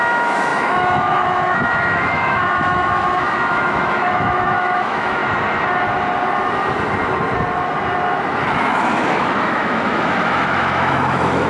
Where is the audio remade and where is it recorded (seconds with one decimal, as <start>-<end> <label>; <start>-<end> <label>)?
0.0-5.2 remade; 5.2-8.5 recorded; 8.5-11.5 remade